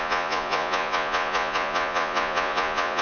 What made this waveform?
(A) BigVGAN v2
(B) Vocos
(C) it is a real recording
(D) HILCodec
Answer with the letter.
B